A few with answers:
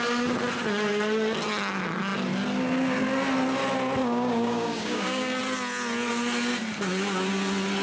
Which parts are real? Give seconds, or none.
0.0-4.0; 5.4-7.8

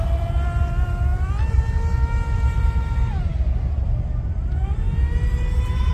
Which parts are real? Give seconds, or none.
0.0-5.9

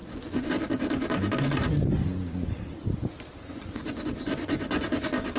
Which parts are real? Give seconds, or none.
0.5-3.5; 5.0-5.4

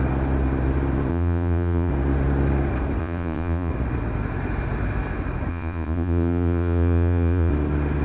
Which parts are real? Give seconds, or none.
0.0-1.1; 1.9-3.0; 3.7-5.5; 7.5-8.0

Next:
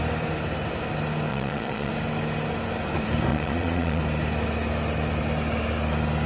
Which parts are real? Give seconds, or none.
0.0-1.3; 1.9-3.3; 4.0-6.3